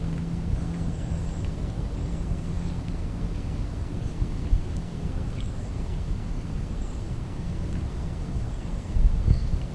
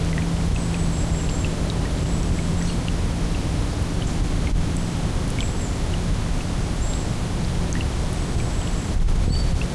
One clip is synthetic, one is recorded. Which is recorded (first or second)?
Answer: second